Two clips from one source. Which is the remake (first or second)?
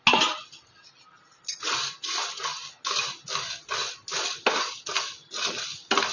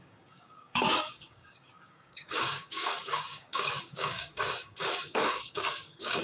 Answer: second